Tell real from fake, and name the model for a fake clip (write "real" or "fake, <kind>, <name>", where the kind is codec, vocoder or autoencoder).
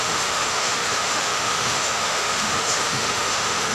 fake, autoencoder, DAC-VAE